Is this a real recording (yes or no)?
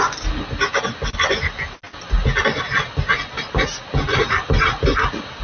yes